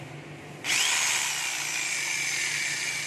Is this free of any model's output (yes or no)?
yes